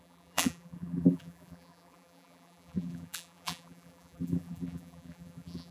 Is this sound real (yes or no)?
no